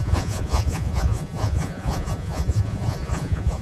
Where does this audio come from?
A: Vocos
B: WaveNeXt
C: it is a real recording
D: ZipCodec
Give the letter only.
A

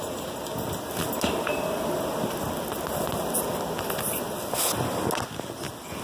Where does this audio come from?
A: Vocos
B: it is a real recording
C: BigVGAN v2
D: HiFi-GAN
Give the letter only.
B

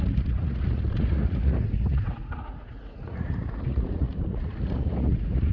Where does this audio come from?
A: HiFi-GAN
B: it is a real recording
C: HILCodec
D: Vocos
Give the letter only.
D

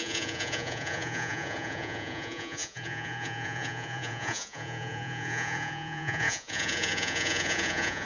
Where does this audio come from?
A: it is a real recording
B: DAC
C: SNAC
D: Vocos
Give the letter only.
D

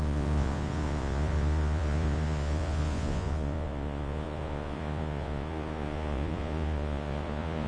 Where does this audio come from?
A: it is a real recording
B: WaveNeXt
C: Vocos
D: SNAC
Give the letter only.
C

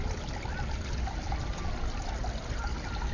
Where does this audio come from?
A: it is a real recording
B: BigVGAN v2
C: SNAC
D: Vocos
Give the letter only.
A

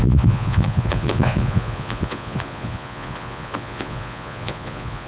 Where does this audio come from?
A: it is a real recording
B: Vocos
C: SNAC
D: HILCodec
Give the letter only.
B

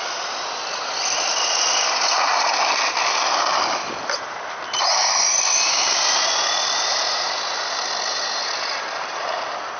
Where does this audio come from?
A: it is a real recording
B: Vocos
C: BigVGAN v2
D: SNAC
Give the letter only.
A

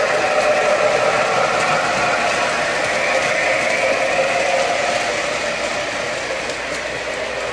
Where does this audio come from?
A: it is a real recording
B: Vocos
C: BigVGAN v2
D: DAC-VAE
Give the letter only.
A